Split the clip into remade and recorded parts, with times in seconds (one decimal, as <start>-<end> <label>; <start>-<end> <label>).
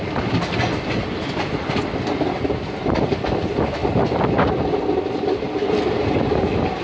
0.0-6.8 recorded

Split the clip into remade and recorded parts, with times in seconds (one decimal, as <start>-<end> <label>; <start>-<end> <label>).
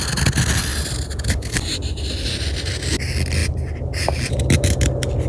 0.0-5.3 recorded